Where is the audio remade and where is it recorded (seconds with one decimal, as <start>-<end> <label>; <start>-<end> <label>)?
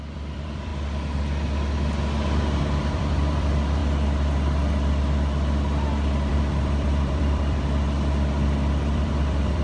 0.0-0.7 remade; 0.7-2.6 recorded; 2.6-3.8 remade; 3.8-6.3 recorded; 6.3-9.6 remade